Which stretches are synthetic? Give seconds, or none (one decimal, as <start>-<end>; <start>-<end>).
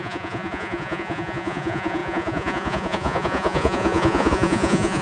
0.0-5.0